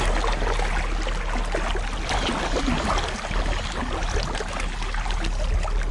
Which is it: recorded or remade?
recorded